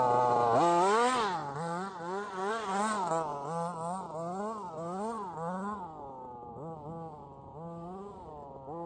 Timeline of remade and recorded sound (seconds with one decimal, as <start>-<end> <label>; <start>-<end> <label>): 0.0-1.4 recorded; 1.4-2.5 remade; 2.5-8.9 recorded